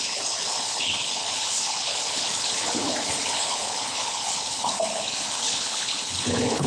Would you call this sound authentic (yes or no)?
no